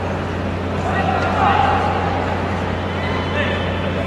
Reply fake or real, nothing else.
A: real